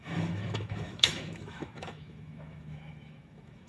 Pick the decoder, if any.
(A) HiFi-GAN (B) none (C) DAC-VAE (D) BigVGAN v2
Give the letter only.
C